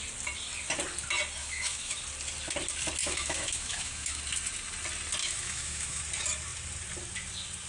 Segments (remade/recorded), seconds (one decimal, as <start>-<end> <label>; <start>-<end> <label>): 0.0-1.4 recorded; 1.4-2.0 remade; 2.0-3.0 recorded; 3.0-4.2 remade; 4.2-5.2 recorded; 5.2-6.0 remade; 6.0-7.7 recorded